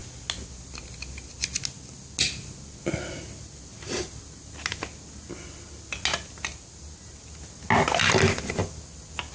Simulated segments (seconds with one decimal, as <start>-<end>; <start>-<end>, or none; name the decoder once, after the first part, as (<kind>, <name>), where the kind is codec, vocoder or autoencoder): none